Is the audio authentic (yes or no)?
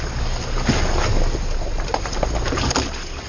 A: yes